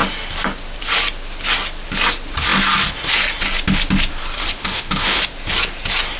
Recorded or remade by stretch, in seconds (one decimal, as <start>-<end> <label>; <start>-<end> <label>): 0.0-4.6 recorded; 4.6-5.2 remade; 5.2-6.2 recorded

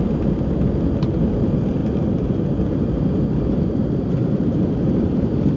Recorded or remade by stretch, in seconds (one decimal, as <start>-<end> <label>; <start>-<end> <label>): 0.0-1.8 recorded; 1.8-5.6 remade

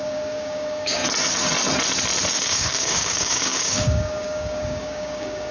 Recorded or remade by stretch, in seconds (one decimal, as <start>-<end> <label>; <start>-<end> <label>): 0.0-1.0 remade; 1.0-2.3 recorded; 2.3-5.5 remade